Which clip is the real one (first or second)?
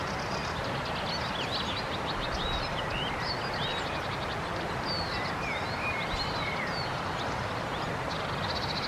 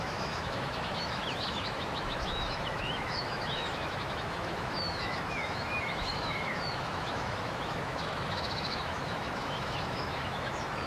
first